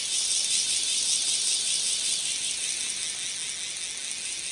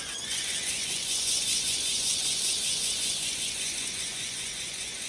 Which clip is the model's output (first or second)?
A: second